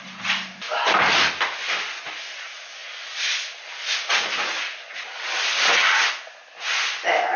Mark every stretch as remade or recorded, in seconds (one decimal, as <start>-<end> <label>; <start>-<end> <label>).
0.0-7.4 recorded